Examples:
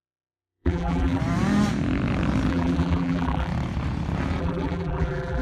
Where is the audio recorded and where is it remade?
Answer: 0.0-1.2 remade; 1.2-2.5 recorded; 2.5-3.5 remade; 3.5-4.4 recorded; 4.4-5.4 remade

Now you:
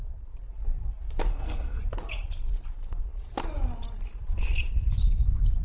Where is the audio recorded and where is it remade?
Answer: 0.0-1.3 recorded; 1.3-1.8 remade; 1.8-5.6 recorded

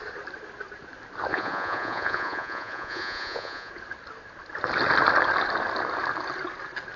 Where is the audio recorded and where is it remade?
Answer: 0.0-1.3 recorded; 1.3-3.7 remade; 3.7-7.0 recorded

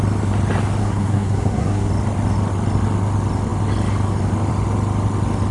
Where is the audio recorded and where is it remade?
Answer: 0.0-0.8 recorded; 0.8-1.9 remade; 1.9-5.5 recorded

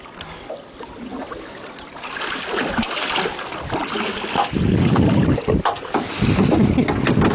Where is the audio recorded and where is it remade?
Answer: 0.0-7.3 recorded

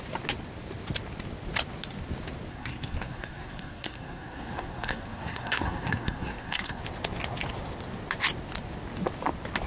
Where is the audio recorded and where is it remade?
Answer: 0.0-2.5 recorded; 2.5-6.8 remade; 6.8-9.7 recorded

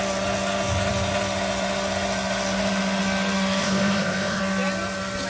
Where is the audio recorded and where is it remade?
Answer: 0.0-3.6 recorded; 3.6-4.4 remade; 4.4-5.3 recorded

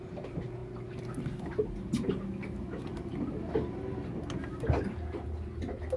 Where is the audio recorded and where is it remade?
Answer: 0.0-6.0 recorded